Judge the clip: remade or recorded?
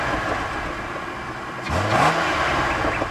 recorded